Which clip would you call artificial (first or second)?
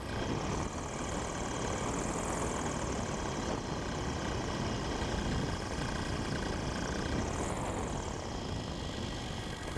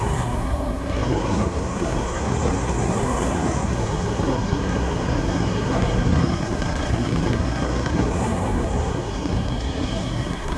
second